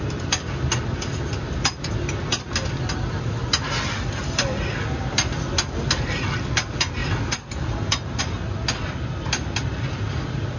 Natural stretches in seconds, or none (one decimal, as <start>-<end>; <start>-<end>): 0.0-10.6